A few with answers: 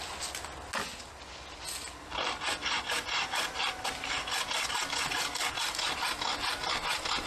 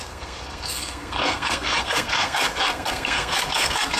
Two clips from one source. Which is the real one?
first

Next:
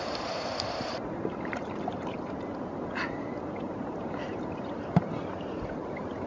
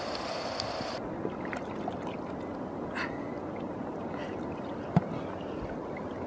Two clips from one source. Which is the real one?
second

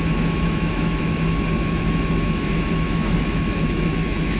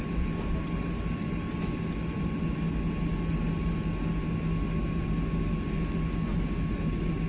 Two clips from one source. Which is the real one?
second